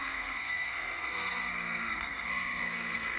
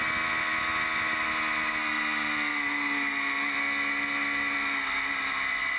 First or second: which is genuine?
second